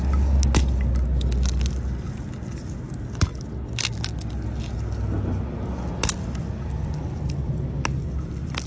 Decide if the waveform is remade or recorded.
recorded